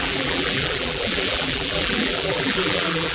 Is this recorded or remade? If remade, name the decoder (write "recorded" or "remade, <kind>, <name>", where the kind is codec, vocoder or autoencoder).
remade, vocoder, BigVGAN v2